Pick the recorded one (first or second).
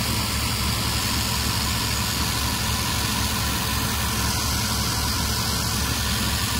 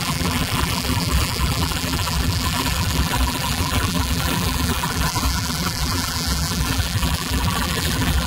first